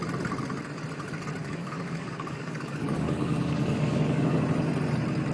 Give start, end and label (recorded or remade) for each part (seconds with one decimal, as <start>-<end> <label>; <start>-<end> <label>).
0.0-1.4 recorded; 1.4-4.4 remade; 4.4-5.3 recorded